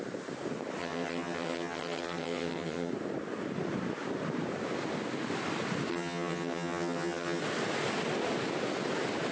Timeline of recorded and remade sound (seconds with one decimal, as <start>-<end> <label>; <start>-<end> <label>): 0.0-0.8 recorded; 0.8-2.9 remade; 2.9-5.9 recorded; 5.9-7.4 remade; 7.4-9.3 recorded